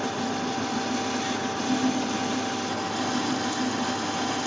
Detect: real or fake real